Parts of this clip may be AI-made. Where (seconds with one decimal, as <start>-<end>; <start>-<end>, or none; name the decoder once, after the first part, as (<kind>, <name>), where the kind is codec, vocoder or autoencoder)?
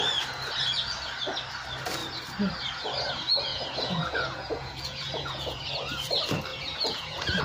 3.5-5.6 (vocoder, Vocos); 6.5-7.4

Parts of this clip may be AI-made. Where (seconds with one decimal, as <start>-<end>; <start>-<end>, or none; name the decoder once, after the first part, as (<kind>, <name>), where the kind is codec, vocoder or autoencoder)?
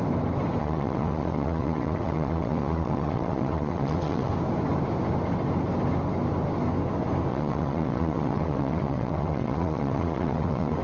0.6-4.3 (vocoder, WaveNeXt); 7.3-10.8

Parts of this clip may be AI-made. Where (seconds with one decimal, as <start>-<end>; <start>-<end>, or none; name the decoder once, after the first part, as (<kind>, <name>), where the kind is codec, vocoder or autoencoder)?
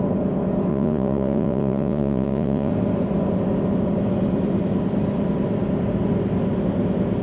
0.7-2.7 (vocoder, Vocos)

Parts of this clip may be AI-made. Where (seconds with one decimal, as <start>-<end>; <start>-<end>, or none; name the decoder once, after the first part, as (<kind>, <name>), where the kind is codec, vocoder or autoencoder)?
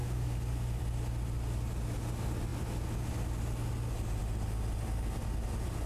0.0-0.8 (codec, DAC)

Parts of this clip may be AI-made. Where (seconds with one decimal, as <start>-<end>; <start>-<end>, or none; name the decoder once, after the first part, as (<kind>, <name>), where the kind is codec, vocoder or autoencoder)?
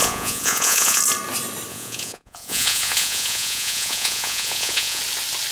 0.0-1.0 (vocoder, Vocos); 1.7-5.0